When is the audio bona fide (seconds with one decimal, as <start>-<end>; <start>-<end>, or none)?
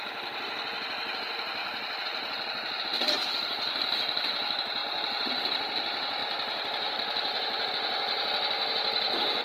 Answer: 0.0-4.8; 5.4-6.2; 7.7-9.4